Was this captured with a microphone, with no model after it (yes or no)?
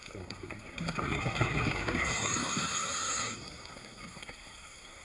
no